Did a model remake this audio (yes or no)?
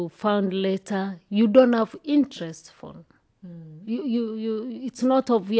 no